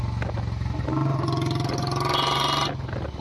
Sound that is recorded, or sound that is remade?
recorded